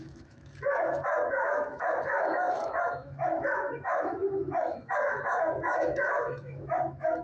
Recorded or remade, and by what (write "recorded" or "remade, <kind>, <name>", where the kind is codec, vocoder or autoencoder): remade, autoencoder, DAC-VAE